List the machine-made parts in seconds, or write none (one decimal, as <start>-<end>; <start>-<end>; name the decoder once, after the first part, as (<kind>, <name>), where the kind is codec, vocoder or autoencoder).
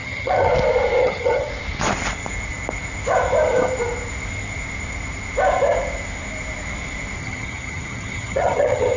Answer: 0.0-0.5 (vocoder, HiFi-GAN); 1.0-1.5; 7.2-9.0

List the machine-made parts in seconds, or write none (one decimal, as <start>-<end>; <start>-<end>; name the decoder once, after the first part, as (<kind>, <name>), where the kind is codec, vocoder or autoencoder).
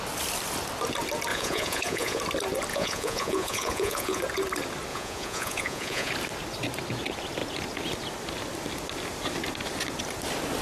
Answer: 1.3-2.2 (vocoder, Vocos); 2.7-4.2; 4.9-6.1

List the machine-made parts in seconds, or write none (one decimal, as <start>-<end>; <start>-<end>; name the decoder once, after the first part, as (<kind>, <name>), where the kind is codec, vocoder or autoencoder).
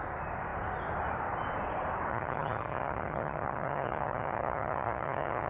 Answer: 2.1-5.5 (vocoder, HiFi-GAN)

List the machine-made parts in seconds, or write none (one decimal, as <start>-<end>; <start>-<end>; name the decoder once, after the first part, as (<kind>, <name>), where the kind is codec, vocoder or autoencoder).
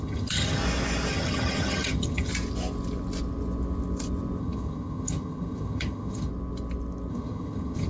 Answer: 0.0-0.6 (vocoder, HiFi-GAN); 1.1-2.3; 4.4-6.3; 7.1-7.9